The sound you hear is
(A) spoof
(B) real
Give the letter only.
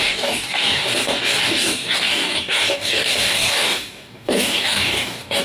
A